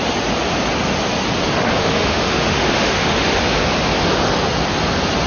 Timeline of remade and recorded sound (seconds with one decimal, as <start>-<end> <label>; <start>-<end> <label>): 0.0-1.8 recorded; 1.8-3.4 remade; 3.4-5.3 recorded

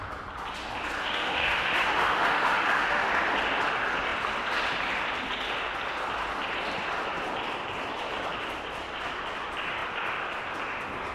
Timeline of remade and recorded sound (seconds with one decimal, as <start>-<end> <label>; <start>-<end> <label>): 0.0-1.0 recorded; 1.0-3.1 remade; 3.1-11.1 recorded

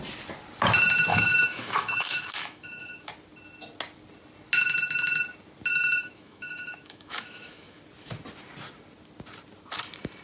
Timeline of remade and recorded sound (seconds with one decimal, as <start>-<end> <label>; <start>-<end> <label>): 0.0-1.1 recorded; 1.1-3.1 remade; 3.1-5.7 recorded; 5.7-7.8 remade; 7.8-10.2 recorded